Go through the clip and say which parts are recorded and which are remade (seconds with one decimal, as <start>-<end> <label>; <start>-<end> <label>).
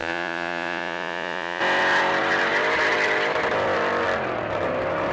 0.0-1.6 remade; 1.6-5.1 recorded